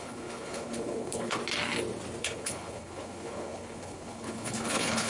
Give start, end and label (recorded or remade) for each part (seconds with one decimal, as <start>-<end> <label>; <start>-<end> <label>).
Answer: 0.0-1.4 remade; 1.4-2.2 recorded; 2.2-5.1 remade